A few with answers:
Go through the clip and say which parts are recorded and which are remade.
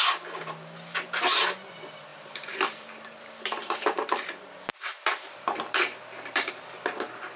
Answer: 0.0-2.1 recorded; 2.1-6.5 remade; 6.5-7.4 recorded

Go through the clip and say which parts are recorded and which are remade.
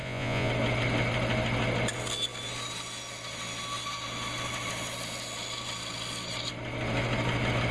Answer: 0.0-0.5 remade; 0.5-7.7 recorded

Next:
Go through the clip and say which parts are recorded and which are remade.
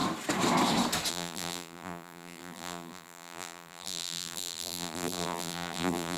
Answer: 0.0-1.1 recorded; 1.1-6.2 remade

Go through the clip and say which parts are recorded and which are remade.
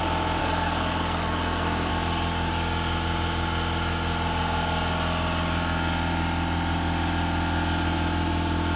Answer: 0.0-0.4 recorded; 0.4-1.9 remade; 1.9-8.8 recorded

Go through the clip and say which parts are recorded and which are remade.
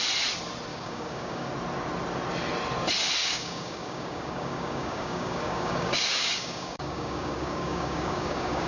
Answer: 0.0-0.7 recorded; 0.7-1.5 remade; 1.5-3.2 recorded; 3.2-8.7 remade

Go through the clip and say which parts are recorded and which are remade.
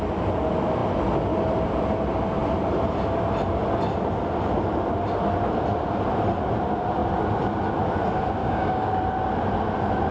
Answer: 0.0-8.4 recorded; 8.4-9.0 remade; 9.0-10.1 recorded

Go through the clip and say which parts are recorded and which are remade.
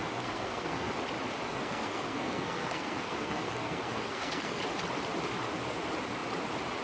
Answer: 0.0-0.9 remade; 0.9-1.5 recorded; 1.5-4.6 remade; 4.6-6.8 recorded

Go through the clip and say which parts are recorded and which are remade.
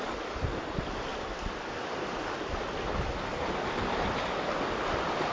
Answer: 0.0-5.3 recorded